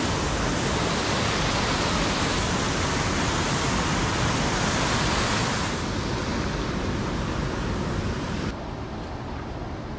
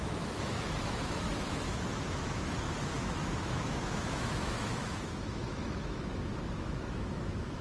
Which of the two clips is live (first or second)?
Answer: first